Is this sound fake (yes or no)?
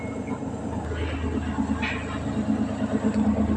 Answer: no